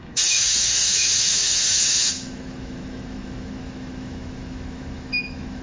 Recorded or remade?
remade